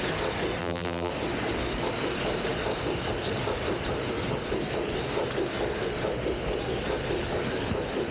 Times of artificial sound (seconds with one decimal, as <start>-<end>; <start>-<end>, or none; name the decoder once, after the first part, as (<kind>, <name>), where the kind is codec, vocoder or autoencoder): 0.6-1.1 (vocoder, BigVGAN v2)